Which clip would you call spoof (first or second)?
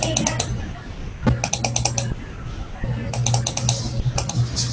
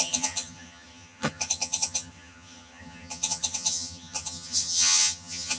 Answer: second